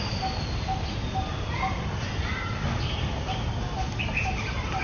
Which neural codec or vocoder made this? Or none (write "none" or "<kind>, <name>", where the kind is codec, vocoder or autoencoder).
none